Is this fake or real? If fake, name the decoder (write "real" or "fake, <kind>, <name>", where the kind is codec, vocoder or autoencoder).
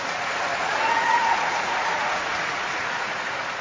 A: fake, vocoder, Vocos